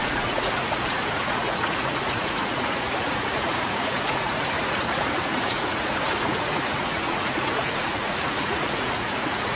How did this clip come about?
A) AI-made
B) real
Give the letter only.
A